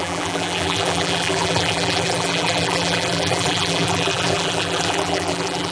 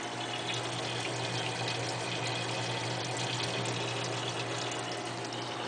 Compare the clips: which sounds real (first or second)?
second